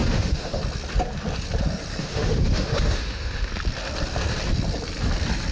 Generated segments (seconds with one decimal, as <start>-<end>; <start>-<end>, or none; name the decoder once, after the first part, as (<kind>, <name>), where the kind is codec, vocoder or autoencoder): 0.0-0.6 (autoencoder, DAC-VAE); 2.0-3.5

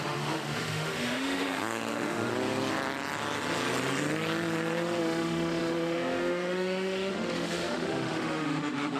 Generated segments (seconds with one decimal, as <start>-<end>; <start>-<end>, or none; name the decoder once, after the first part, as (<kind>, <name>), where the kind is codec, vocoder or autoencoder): 0.0-2.3 (autoencoder, DAC-VAE); 5.0-9.0